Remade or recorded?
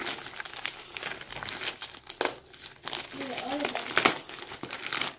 recorded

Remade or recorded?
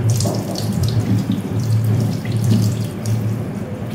remade